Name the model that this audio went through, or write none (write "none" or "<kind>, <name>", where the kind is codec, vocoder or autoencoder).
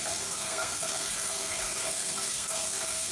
codec, SNAC